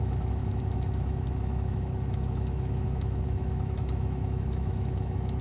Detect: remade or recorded remade